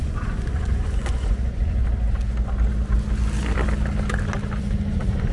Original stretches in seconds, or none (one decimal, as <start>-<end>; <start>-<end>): 1.8-4.6

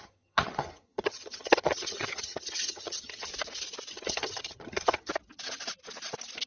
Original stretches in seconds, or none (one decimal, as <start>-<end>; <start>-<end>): 3.3-3.9; 5.1-6.5

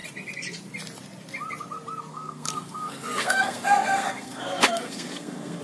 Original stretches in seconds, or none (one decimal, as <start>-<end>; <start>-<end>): 0.0-2.1

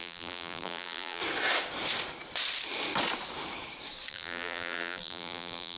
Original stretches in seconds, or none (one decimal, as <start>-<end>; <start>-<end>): 1.2-4.1

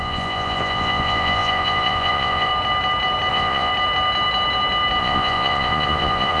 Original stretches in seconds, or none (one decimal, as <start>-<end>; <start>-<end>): 2.5-3.3; 3.7-5.0

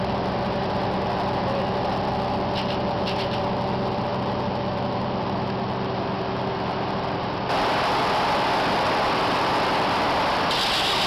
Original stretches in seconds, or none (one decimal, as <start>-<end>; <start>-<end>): 0.0-11.1

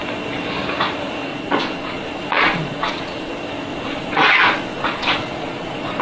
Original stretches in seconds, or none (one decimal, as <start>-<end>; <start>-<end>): 0.0-1.3; 3.3-3.7